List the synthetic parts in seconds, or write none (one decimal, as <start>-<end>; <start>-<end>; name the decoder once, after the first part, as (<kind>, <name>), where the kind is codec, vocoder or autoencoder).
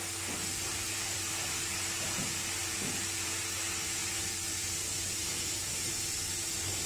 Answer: 0.7-1.7 (vocoder, BigVGAN v2); 2.6-3.4; 4.0-6.0